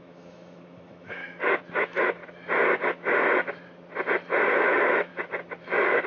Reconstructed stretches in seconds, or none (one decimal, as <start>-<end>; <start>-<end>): 0.0-1.2; 1.7-2.2; 4.5-5.1; 5.6-6.1